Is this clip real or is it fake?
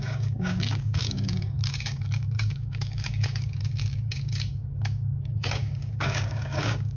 fake